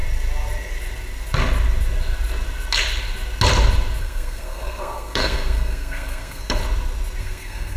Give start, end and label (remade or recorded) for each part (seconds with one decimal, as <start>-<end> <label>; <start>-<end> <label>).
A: 0.0-4.0 recorded; 4.0-6.6 remade; 6.6-7.2 recorded; 7.2-7.8 remade

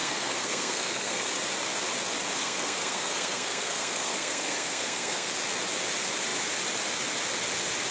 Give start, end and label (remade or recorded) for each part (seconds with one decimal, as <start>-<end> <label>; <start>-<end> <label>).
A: 0.0-1.3 remade; 1.3-2.4 recorded; 2.4-5.3 remade; 5.3-7.9 recorded

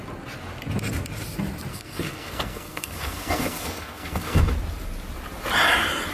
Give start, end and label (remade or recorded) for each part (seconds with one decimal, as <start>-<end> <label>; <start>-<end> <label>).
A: 0.0-1.7 recorded; 1.7-4.5 remade; 4.5-6.1 recorded

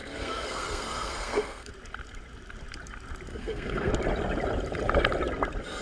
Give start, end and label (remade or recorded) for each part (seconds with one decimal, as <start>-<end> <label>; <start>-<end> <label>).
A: 0.0-1.7 remade; 1.7-3.3 recorded; 3.3-3.9 remade; 3.9-5.8 recorded